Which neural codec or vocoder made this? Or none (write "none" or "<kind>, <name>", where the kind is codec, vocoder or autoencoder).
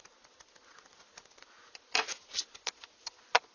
none